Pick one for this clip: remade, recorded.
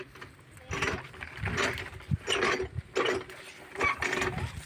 recorded